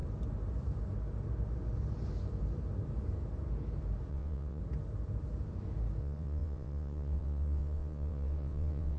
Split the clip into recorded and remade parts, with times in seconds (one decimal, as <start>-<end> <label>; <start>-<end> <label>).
0.0-4.1 recorded; 4.1-4.6 remade; 4.6-6.0 recorded; 6.0-9.0 remade